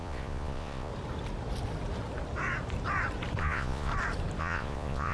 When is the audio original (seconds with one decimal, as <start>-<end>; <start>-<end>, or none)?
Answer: 0.9-3.4; 3.9-4.4